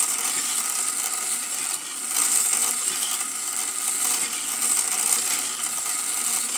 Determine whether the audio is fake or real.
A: real